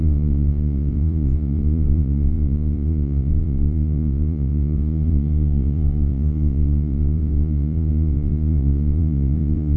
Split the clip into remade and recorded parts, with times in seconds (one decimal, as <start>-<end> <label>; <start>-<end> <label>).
0.0-9.8 remade